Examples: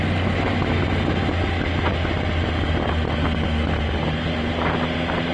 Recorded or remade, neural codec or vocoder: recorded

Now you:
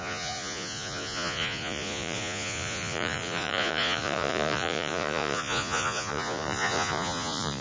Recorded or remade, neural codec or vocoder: remade, vocoder, Vocos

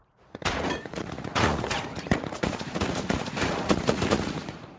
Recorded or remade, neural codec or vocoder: remade, vocoder, Vocos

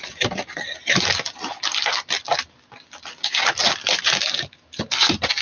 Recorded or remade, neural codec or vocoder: recorded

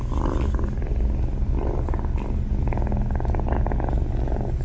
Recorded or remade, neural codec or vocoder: recorded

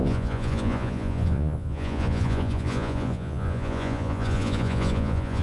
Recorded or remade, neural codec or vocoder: remade, vocoder, Vocos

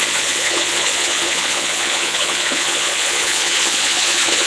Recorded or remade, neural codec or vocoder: remade, vocoder, Vocos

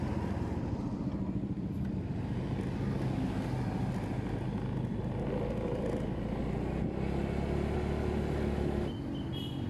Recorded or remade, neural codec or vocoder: recorded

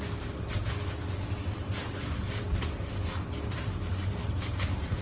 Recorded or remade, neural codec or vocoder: recorded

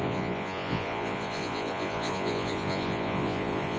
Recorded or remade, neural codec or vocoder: remade, vocoder, Vocos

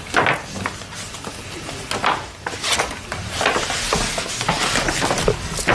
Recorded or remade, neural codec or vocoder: recorded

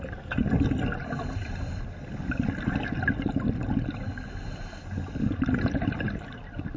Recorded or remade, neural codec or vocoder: recorded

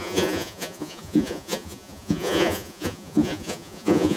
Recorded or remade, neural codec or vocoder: remade, vocoder, Vocos